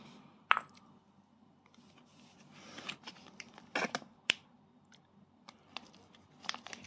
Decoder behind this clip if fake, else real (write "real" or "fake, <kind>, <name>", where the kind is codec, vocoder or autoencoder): fake, vocoder, BigVGAN v2